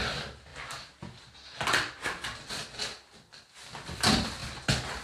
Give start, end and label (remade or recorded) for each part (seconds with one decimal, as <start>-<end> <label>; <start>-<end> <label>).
0.0-5.0 recorded